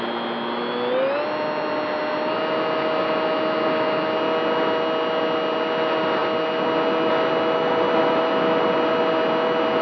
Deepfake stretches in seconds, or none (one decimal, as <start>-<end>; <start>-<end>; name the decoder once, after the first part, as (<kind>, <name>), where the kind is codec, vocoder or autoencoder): none